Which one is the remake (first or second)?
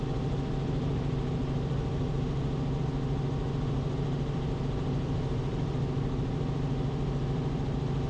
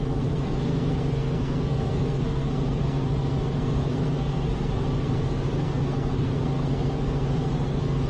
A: second